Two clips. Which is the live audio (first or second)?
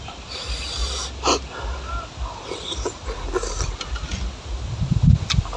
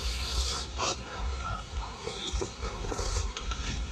first